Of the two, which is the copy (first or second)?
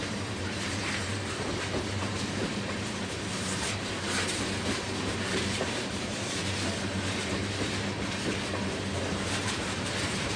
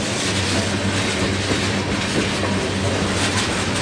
first